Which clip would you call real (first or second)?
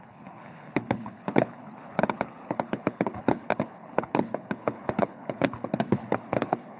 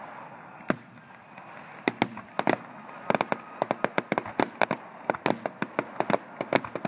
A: second